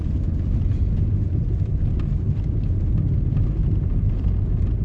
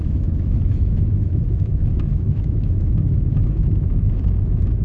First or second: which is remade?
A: second